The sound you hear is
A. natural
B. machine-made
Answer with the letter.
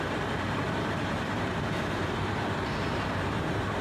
B